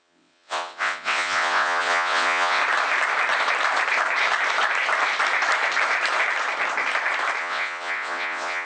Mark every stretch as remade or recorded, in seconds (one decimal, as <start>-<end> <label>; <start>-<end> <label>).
0.0-2.6 remade; 2.6-7.4 recorded; 7.4-8.6 remade

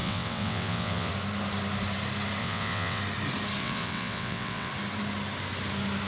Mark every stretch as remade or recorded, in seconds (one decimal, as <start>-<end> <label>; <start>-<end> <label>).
0.0-1.1 remade; 1.1-2.4 recorded; 2.4-3.0 remade; 3.0-3.6 recorded; 3.6-4.7 remade; 4.7-6.1 recorded

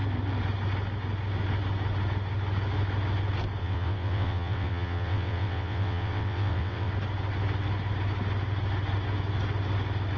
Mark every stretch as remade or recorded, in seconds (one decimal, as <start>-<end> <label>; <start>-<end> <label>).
0.0-3.6 recorded; 3.6-6.9 remade; 6.9-10.2 recorded

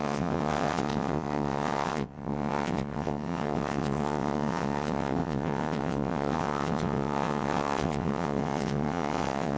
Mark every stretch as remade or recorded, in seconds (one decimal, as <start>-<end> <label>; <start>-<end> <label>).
0.0-9.6 remade

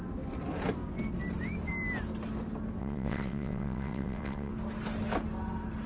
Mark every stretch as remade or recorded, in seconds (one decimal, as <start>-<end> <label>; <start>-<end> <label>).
0.0-2.8 recorded; 2.8-4.5 remade; 4.5-5.9 recorded